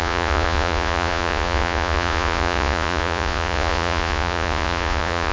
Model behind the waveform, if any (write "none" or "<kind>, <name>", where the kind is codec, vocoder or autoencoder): vocoder, Vocos